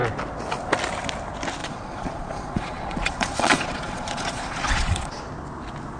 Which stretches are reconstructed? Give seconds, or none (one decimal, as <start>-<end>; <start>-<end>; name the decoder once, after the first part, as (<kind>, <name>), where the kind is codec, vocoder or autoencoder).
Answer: 1.6-5.2 (vocoder, Vocos)